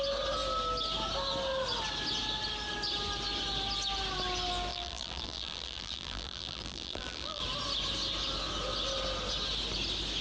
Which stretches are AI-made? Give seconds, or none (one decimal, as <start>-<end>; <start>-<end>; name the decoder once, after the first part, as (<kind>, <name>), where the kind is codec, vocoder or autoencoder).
4.7-7.4 (vocoder, BigVGAN v2)